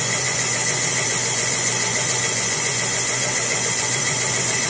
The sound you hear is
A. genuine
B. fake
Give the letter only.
B